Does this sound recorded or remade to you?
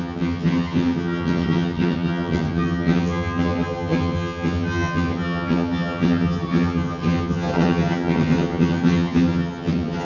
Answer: remade